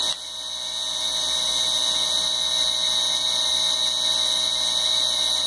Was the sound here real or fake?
real